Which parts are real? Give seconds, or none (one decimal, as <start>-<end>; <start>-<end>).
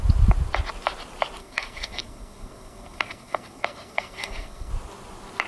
0.0-1.4; 4.7-5.5